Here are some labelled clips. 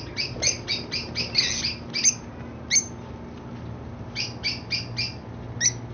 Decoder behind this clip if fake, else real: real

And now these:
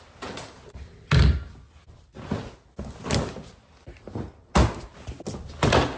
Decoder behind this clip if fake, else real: real